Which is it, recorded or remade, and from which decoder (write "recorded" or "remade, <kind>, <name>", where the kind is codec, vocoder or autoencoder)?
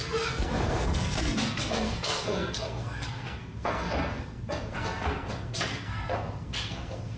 remade, codec, SNAC